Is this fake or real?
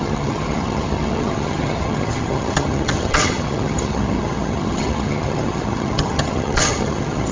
fake